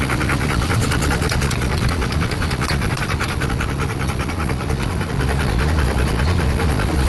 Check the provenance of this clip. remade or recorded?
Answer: remade